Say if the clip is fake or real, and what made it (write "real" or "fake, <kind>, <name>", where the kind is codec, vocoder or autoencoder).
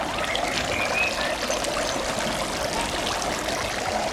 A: real